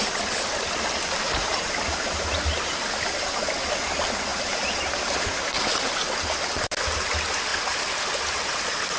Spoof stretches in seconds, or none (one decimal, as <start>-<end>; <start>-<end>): 1.4-2.1; 7.5-8.1